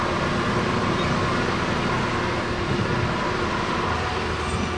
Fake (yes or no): yes